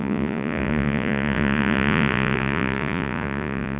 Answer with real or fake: fake